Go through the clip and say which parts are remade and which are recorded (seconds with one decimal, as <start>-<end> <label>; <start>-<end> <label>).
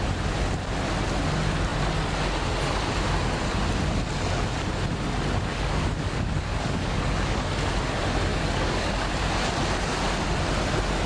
0.0-5.5 recorded; 5.5-7.5 remade; 7.5-8.3 recorded; 8.3-8.9 remade; 8.9-11.1 recorded